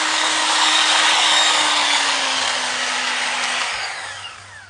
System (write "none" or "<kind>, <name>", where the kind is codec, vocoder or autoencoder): codec, DAC